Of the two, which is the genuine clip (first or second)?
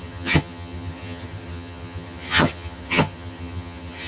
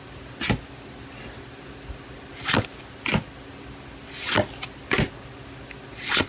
second